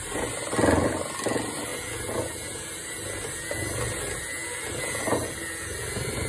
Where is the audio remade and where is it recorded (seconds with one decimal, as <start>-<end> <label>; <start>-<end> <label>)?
0.0-6.3 recorded

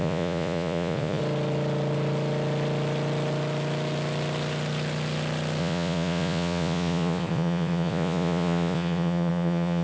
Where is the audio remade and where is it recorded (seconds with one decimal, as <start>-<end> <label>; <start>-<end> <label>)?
0.0-1.2 remade; 1.2-5.6 recorded; 5.6-9.8 remade

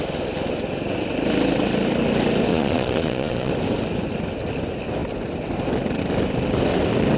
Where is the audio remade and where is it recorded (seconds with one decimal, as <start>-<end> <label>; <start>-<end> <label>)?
0.0-2.5 recorded; 2.5-3.5 remade; 3.5-7.2 recorded

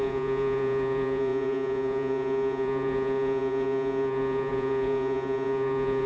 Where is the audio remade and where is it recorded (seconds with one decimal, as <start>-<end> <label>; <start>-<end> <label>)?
0.0-6.1 remade

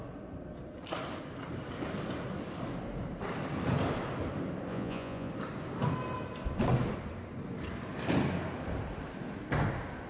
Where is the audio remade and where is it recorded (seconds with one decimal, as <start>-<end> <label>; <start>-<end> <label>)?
0.0-4.7 recorded; 4.7-5.3 remade; 5.3-10.1 recorded

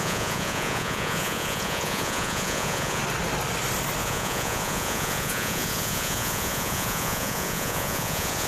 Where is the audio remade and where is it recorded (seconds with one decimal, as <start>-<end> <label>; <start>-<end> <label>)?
0.0-3.0 remade; 3.0-4.0 recorded; 4.0-8.5 remade